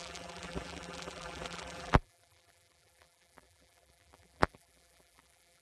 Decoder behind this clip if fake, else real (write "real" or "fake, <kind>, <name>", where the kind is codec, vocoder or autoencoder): fake, vocoder, BigVGAN v2